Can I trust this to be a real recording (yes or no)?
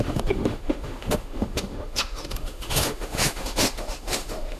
no